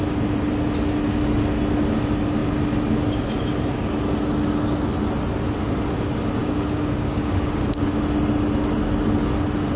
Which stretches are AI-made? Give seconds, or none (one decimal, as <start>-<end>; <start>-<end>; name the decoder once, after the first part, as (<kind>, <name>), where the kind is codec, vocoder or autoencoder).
6.4-7.8 (codec, DAC)